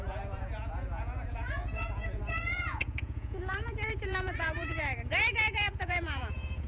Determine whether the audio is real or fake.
fake